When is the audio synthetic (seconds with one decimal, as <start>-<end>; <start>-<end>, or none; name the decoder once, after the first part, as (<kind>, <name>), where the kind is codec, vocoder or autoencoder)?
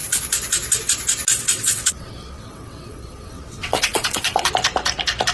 1.3-4.5 (vocoder, WaveNeXt)